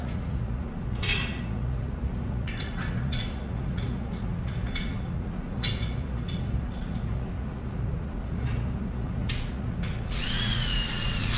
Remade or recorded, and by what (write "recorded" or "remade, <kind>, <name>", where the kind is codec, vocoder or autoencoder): remade, vocoder, Vocos